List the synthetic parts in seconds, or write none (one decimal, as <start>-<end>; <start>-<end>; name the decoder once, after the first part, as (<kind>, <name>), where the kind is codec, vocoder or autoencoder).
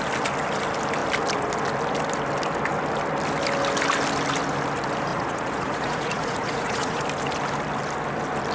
5.1-7.0 (vocoder, Vocos)